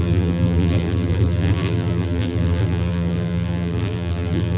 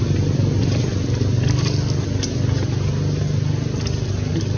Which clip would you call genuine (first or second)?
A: second